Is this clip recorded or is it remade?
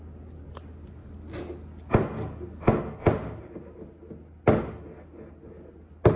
recorded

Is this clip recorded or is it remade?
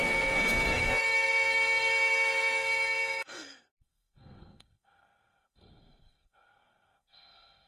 remade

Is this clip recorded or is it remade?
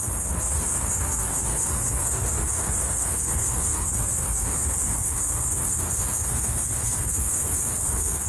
remade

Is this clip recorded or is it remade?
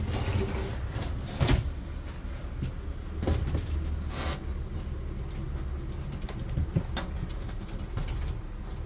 recorded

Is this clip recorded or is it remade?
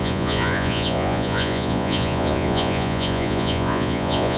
remade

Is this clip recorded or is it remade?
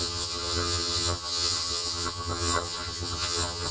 remade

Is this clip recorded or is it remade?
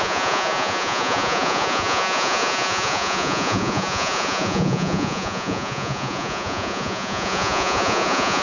remade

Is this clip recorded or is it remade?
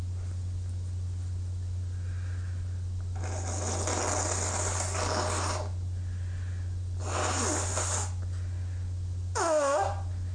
recorded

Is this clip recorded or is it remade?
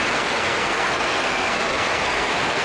remade